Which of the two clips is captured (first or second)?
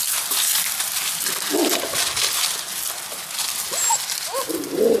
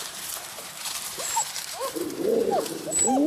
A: first